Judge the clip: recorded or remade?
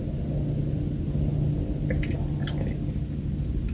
recorded